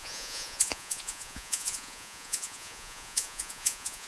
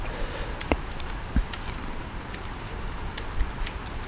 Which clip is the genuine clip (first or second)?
second